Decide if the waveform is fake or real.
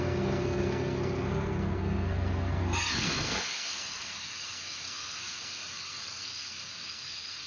fake